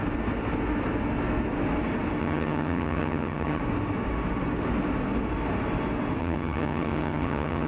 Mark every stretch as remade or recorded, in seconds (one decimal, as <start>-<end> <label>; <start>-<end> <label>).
0.0-2.2 recorded; 2.2-3.6 remade; 3.6-6.2 recorded; 6.2-7.7 remade